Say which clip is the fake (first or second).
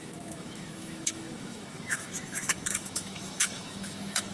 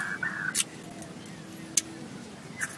first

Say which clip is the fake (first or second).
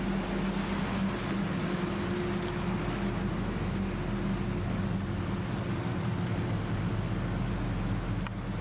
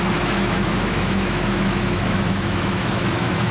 second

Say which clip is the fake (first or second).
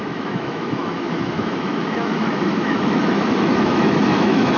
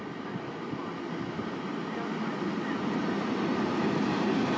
first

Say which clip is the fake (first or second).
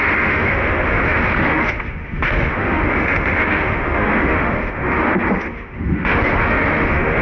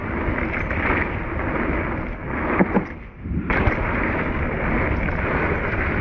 first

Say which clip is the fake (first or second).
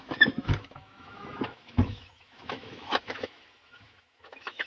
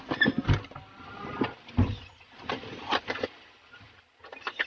first